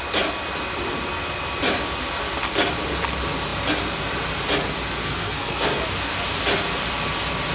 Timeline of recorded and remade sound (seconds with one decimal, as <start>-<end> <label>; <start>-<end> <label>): 0.0-5.0 recorded; 5.0-5.8 remade; 5.8-7.5 recorded